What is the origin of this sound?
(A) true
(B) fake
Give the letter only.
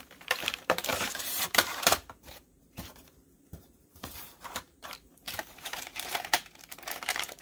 B